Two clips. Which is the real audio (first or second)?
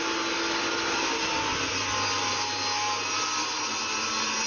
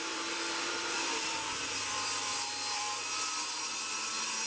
first